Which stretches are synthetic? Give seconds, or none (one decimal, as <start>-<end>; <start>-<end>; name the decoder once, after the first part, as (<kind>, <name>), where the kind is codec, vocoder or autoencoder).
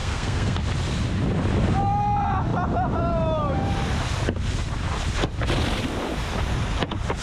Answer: 0.0-0.6 (codec, SNAC)